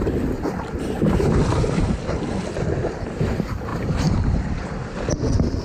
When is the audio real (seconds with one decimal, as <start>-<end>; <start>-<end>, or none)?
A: 0.0-3.7; 5.1-5.6